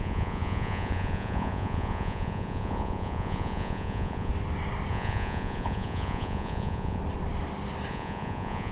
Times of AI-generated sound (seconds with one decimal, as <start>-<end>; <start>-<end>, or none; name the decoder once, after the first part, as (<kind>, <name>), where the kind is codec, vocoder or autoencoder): 0.0-4.3 (vocoder, Vocos); 4.9-7.0; 7.9-8.7